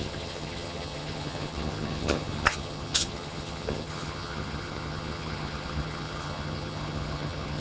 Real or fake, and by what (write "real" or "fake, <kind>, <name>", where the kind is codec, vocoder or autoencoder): fake, vocoder, HiFi-GAN